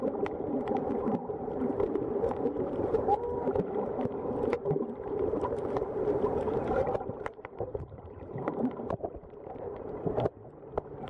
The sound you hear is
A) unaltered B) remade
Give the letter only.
B